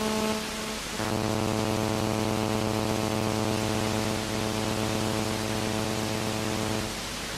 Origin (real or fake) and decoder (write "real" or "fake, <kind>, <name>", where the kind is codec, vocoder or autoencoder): real